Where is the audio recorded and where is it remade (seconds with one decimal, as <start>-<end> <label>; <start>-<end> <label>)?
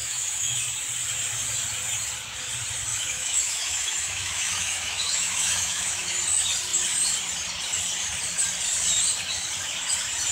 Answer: 0.0-0.6 remade; 0.6-2.9 recorded; 2.9-6.1 remade; 6.1-10.3 recorded